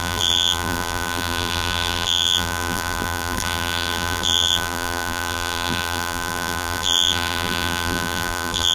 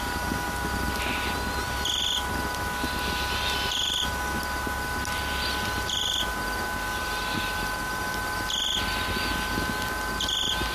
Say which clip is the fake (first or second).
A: first